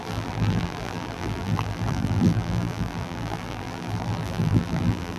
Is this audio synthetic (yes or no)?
yes